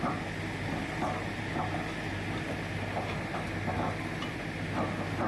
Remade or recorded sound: recorded